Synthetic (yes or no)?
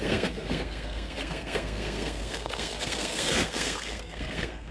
yes